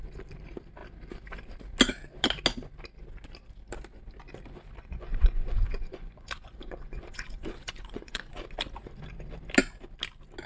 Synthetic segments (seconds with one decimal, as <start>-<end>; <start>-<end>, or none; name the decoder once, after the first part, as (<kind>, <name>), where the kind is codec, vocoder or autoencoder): 4.8-8.3 (vocoder, Vocos)